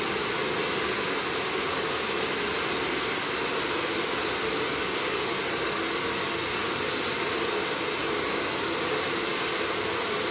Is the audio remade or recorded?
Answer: recorded